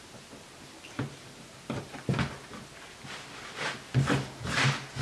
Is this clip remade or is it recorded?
recorded